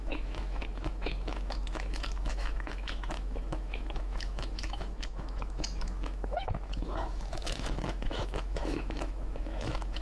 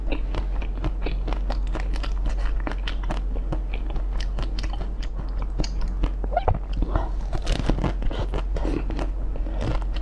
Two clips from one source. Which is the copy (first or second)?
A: first